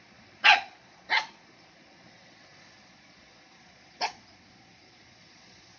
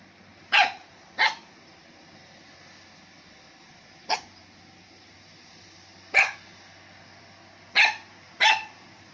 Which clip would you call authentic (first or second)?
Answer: second